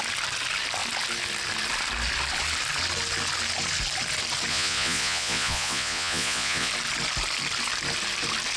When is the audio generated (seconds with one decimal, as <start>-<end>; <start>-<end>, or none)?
4.5-6.7